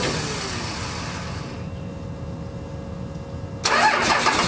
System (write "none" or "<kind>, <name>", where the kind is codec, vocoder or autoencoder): none